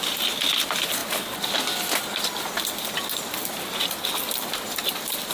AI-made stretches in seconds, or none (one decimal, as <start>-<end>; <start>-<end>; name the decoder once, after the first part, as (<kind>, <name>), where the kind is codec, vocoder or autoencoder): none